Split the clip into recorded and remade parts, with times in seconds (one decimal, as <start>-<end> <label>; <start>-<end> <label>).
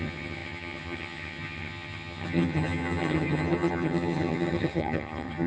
0.0-5.5 remade